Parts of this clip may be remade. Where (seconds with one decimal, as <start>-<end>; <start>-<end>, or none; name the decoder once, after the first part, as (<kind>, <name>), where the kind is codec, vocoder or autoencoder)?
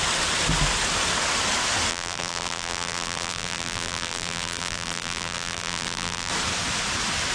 1.9-6.3 (vocoder, BigVGAN v2)